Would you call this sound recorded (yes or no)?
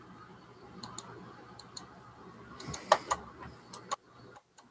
yes